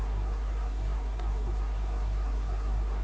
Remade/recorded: remade